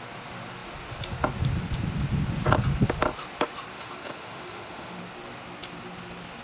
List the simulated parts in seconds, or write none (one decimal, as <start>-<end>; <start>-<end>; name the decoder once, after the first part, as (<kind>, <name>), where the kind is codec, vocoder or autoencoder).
3.7-5.0 (autoencoder, DAC-VAE)